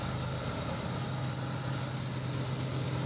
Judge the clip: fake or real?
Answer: real